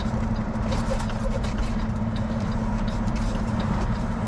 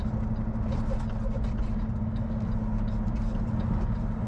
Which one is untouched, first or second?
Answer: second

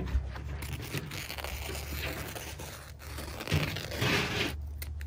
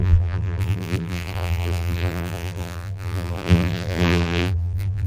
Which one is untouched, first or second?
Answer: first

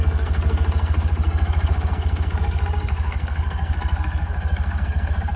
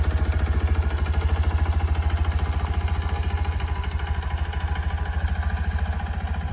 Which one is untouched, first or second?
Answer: second